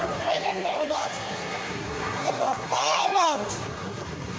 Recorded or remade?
remade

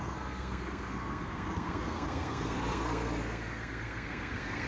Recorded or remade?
remade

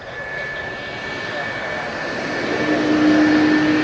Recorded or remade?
recorded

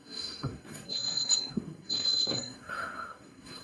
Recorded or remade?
remade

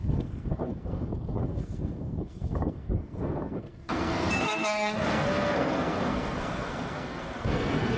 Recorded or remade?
remade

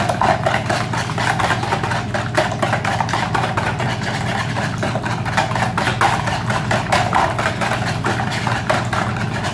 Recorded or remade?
recorded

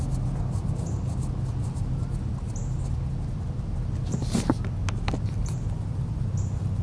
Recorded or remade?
recorded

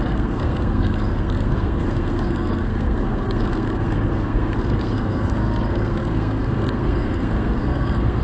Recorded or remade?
remade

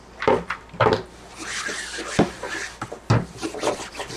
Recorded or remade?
recorded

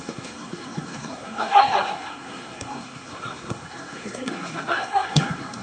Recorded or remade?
remade